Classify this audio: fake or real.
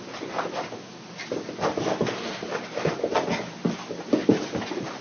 real